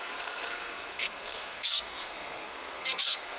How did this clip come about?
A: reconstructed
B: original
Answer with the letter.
A